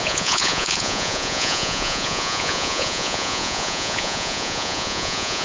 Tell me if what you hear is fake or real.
fake